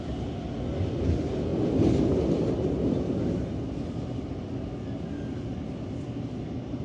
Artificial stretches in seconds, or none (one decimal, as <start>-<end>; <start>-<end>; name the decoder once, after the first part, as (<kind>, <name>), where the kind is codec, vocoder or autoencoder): none